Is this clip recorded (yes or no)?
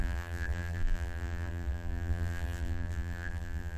no